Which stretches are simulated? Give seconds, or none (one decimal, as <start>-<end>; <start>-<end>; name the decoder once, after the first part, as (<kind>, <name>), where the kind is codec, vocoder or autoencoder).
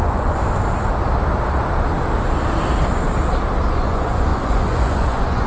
0.0-0.4 (vocoder, Vocos); 3.7-5.5